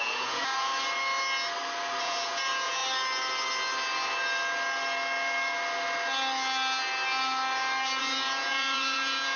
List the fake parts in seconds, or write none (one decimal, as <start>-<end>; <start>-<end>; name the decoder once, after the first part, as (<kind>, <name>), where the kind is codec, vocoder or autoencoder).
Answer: 0.0-0.7 (vocoder, Vocos); 2.0-2.8; 8.0-9.4